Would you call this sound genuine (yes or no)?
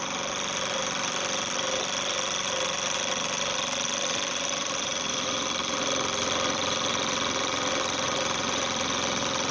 yes